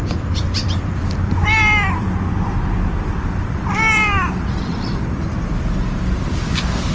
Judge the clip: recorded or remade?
remade